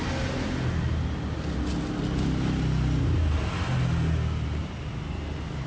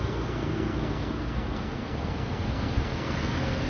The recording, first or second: first